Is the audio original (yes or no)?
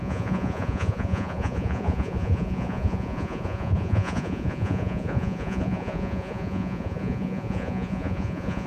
no